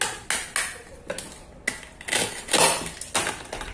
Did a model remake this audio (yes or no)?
no